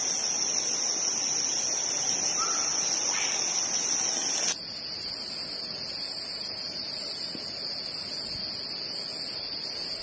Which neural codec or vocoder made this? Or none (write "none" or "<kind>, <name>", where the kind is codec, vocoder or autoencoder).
none